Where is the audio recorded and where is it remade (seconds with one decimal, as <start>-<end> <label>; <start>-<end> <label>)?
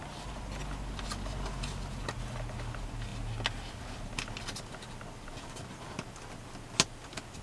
0.0-7.4 recorded